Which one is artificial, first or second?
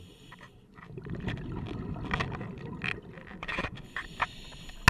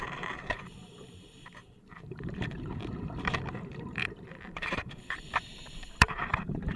second